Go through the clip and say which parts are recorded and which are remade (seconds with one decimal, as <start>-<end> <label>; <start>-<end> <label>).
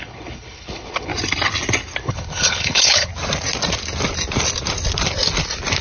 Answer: 0.0-1.1 remade; 1.1-2.0 recorded; 2.0-3.1 remade; 3.1-5.8 recorded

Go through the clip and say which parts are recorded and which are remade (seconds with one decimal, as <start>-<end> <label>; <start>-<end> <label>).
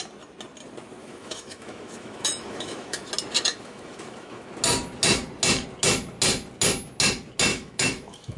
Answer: 0.0-1.0 recorded; 1.0-3.1 remade; 3.1-3.5 recorded; 3.5-4.5 remade; 4.5-7.5 recorded; 7.5-8.4 remade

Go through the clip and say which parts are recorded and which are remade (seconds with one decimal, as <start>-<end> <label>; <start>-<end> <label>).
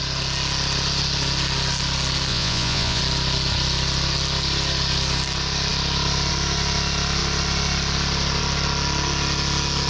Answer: 0.0-2.3 recorded; 2.3-3.0 remade; 3.0-9.9 recorded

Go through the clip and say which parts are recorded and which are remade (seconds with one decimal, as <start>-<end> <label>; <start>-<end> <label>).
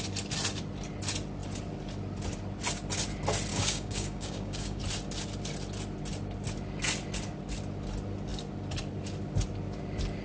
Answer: 0.0-3.5 recorded; 3.5-4.8 remade; 4.8-10.2 recorded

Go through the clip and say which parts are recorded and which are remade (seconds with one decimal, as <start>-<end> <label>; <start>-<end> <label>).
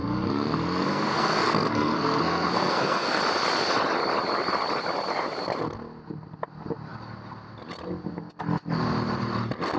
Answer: 0.0-3.2 remade; 3.2-9.8 recorded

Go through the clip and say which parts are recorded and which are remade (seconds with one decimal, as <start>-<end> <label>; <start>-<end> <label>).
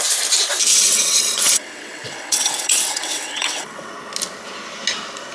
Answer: 0.0-0.7 recorded; 0.7-3.9 remade; 3.9-5.3 recorded